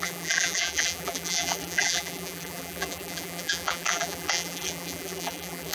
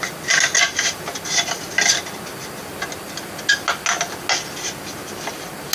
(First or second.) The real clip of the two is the second